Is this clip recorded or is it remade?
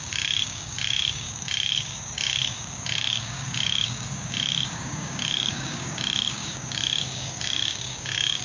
remade